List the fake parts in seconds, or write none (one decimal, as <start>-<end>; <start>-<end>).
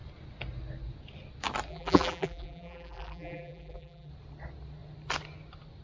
1.7-4.1